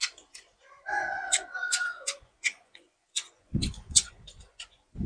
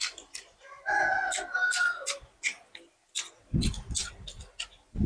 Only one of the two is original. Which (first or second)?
second